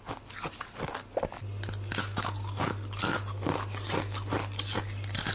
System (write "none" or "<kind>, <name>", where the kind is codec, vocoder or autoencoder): none